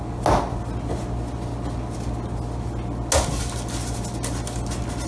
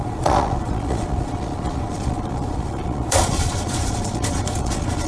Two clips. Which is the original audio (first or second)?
first